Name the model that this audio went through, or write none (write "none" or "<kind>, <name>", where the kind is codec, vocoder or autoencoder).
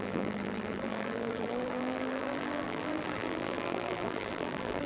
vocoder, BigVGAN v2